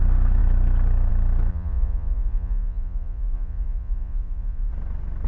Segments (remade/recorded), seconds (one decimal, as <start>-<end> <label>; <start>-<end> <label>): 0.0-1.5 recorded; 1.5-4.7 remade; 4.7-5.3 recorded